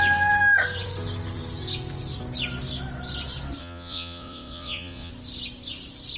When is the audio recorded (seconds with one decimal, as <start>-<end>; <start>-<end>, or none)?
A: 0.0-3.6; 5.1-6.2